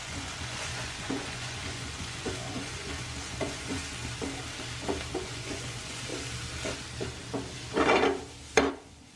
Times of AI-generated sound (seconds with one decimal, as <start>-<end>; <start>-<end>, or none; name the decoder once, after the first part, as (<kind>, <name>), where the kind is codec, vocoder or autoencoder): 0.0-3.8 (vocoder, Vocos); 5.1-6.1; 8.7-9.2